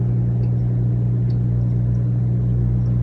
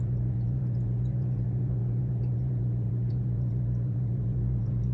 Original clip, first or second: first